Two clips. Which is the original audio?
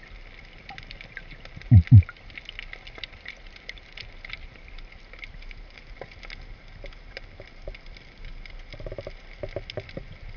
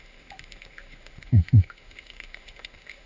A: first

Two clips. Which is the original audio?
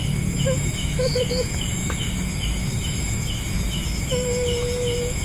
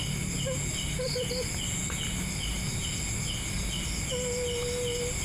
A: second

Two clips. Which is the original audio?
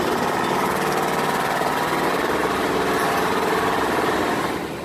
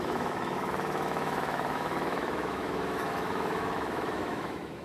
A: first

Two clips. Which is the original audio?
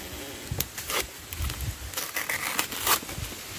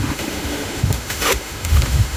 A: first